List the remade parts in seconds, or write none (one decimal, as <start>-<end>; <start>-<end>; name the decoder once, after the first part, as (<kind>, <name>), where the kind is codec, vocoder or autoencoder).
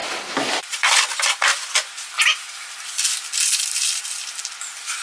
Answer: none